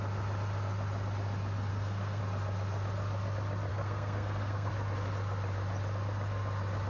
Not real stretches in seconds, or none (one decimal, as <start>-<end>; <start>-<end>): 1.7-2.2; 3.7-4.7